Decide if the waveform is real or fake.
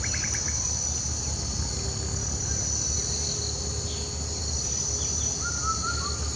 real